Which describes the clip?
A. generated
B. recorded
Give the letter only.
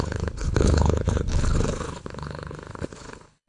A